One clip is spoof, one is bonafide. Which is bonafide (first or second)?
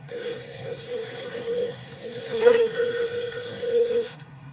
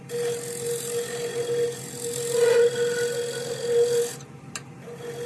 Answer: second